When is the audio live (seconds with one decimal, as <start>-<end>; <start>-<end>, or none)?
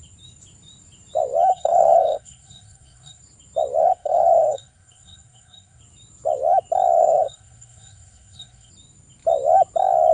0.0-1.5; 3.2-3.8; 5.8-7.0; 8.7-10.1